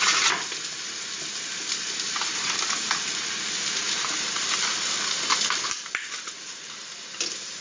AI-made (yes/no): no